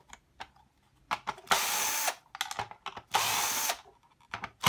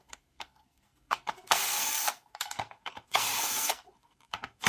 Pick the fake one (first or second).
second